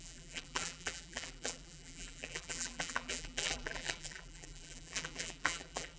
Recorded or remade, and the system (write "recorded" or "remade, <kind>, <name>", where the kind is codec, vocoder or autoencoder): remade, vocoder, BigVGAN v2